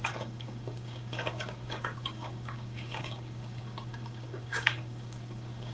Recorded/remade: remade